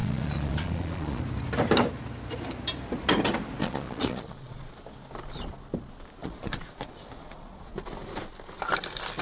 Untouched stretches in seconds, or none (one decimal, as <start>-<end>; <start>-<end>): 1.2-3.6; 4.7-6.2; 7.7-9.2